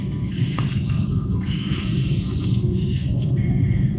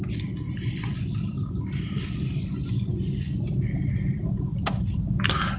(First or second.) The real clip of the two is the second